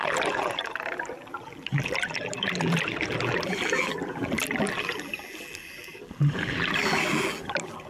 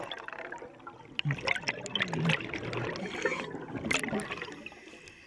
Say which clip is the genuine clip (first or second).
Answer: second